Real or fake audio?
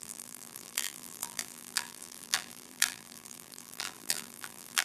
fake